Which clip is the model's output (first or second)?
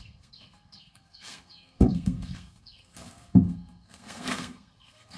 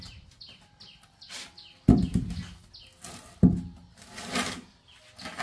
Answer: first